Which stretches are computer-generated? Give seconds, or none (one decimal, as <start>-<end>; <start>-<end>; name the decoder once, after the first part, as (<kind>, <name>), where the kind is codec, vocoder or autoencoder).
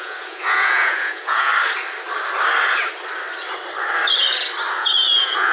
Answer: 0.0-1.5 (vocoder, Vocos); 4.8-5.5